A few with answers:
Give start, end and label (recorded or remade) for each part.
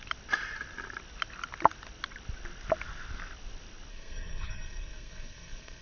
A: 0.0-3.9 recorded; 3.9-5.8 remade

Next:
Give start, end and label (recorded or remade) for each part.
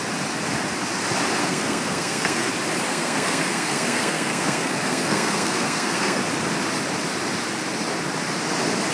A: 0.0-1.4 recorded; 1.4-2.5 remade; 2.5-2.9 recorded; 2.9-6.2 remade; 6.2-8.9 recorded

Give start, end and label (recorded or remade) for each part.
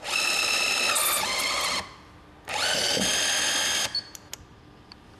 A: 0.0-5.2 recorded